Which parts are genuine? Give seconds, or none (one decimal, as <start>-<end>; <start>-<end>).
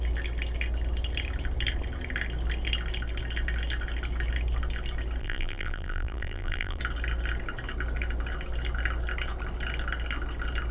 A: 0.0-5.2; 6.8-10.7